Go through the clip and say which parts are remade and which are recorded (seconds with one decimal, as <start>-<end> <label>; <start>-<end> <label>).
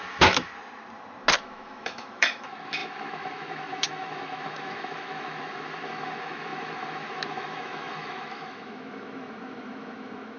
0.0-0.5 remade; 0.5-1.4 recorded; 1.4-10.4 remade